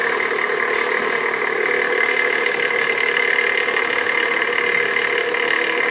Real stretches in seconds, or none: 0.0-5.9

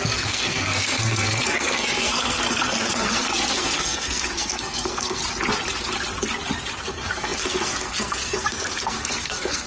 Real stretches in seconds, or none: 5.2-6.8

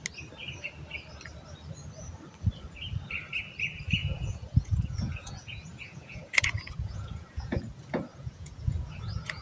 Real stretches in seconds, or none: 0.0-4.0; 7.6-8.1

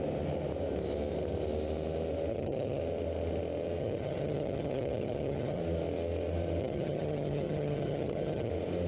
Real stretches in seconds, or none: 0.0-2.3; 2.8-3.8; 5.6-6.6; 8.5-8.9